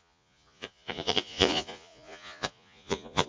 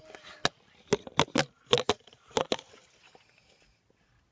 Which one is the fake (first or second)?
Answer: first